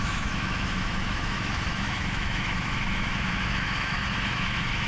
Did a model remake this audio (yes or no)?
yes